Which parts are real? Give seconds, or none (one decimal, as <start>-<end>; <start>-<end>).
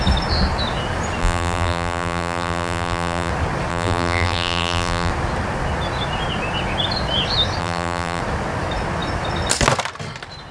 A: 0.0-1.2; 3.3-3.7; 5.1-7.6; 8.2-10.5